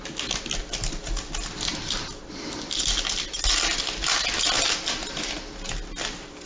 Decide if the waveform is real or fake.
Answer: real